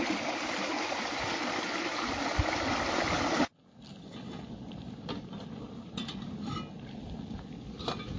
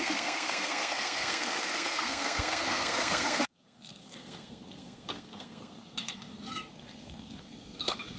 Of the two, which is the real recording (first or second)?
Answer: first